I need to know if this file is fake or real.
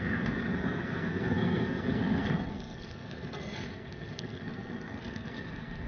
fake